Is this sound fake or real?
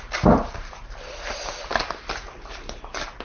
real